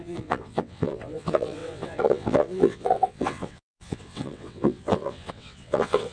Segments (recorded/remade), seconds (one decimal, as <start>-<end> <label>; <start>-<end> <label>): 0.0-6.1 remade